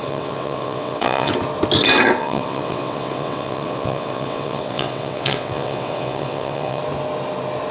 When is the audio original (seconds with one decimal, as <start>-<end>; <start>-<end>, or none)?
1.3-2.2; 6.8-7.7